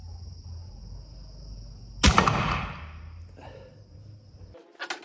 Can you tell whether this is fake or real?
real